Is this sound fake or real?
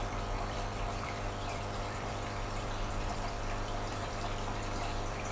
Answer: fake